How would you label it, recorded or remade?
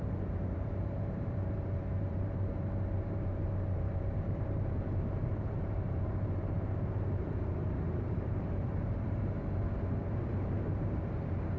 remade